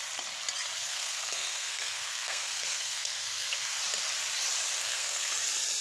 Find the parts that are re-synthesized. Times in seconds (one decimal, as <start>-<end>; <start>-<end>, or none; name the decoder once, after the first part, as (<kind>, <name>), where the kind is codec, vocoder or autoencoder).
0.9-3.8 (codec, SNAC); 4.8-5.3